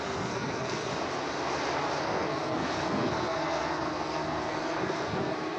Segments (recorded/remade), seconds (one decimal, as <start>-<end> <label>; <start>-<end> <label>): 0.0-0.9 remade; 0.9-2.0 recorded; 2.0-5.6 remade